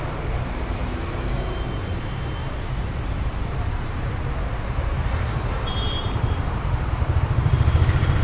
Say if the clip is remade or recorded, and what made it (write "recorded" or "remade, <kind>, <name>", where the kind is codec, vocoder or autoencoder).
remade, vocoder, BigVGAN v2